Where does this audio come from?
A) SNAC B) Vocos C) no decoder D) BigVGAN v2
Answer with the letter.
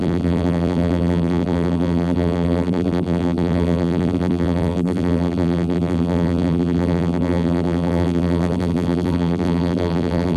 D